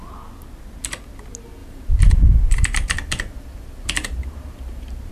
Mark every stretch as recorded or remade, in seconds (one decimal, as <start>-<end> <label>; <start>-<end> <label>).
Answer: 0.0-1.6 recorded; 1.6-5.1 remade